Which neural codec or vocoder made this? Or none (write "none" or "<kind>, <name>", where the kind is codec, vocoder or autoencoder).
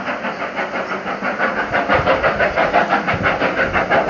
none